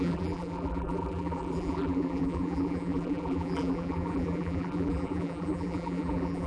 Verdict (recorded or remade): remade